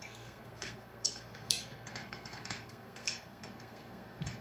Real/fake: fake